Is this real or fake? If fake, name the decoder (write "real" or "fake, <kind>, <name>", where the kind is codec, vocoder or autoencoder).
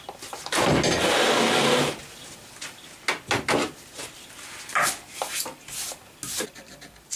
real